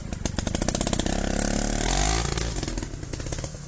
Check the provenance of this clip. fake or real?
real